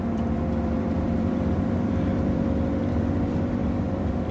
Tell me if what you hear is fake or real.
fake